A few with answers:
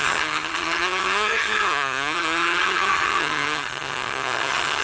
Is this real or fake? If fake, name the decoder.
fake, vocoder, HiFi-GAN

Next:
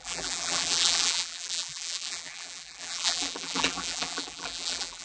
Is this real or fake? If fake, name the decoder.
fake, vocoder, BigVGAN v2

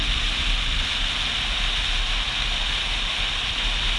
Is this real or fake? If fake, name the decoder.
real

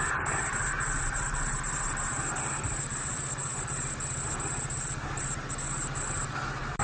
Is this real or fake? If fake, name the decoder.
real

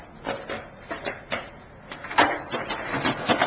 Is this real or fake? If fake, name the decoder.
real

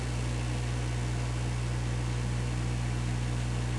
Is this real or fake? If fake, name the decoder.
real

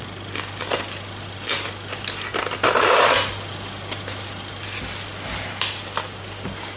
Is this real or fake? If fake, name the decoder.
real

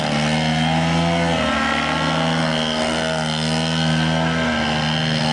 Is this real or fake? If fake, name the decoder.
real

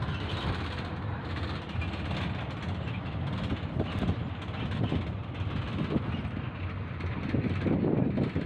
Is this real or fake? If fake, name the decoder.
real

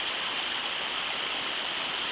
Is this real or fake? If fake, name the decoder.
real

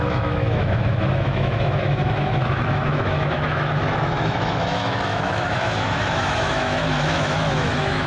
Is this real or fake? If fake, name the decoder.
fake, autoencoder, DAC-VAE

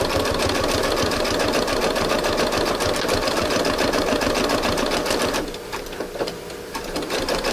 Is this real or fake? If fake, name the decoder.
fake, vocoder, BigVGAN v2